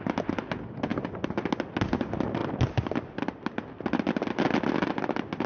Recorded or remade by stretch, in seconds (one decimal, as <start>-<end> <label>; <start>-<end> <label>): 0.0-5.5 recorded